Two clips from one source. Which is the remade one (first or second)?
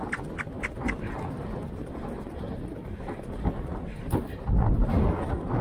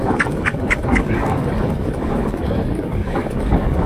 second